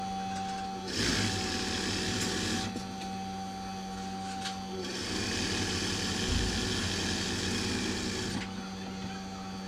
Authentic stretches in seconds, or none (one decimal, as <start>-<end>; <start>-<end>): 0.0-9.7